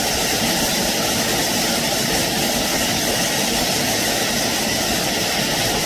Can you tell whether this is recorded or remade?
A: recorded